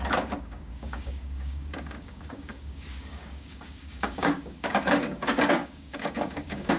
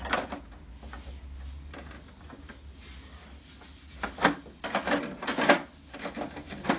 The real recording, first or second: second